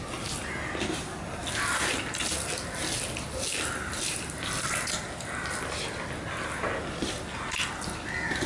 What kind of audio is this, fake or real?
real